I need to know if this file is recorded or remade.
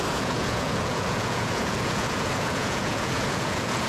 remade